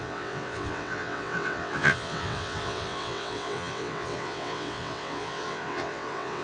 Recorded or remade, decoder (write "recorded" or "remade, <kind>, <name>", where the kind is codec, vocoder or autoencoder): remade, vocoder, WaveNeXt